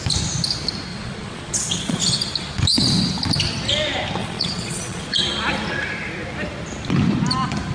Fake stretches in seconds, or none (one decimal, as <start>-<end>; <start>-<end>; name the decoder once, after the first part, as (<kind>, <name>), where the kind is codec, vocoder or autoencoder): 0.9-2.0 (vocoder, Vocos); 4.2-5.2